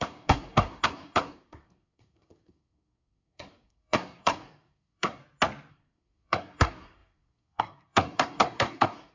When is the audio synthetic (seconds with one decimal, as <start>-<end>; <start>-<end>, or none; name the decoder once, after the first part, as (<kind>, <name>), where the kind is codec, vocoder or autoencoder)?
0.0-5.2 (codec, SNAC); 5.7-9.1